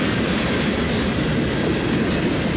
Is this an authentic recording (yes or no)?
yes